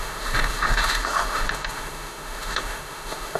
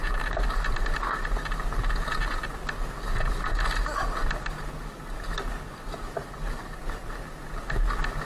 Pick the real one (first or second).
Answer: second